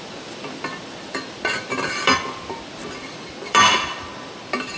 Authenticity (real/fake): fake